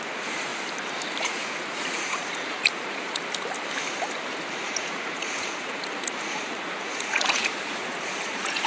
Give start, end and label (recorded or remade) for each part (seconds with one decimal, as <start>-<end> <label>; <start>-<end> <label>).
0.0-0.5 remade; 0.5-1.2 recorded; 1.2-3.2 remade; 3.2-4.5 recorded; 4.5-8.7 remade